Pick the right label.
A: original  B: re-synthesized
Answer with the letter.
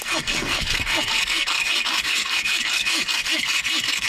B